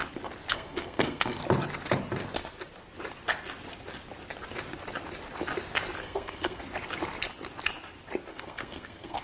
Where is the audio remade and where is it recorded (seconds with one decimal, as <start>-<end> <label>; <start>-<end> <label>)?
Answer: 0.0-0.5 recorded; 0.5-1.4 remade; 1.4-6.0 recorded; 6.0-6.6 remade; 6.6-8.3 recorded; 8.3-9.2 remade